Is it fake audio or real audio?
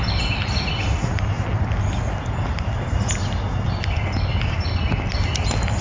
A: real